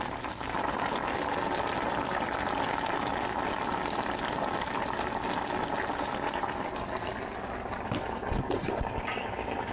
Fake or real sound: real